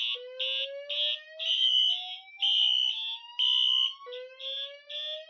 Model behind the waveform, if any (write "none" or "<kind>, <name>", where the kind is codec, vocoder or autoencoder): none